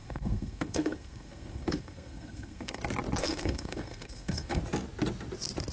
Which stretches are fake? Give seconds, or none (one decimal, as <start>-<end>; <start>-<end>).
0.0-2.8; 3.2-4.6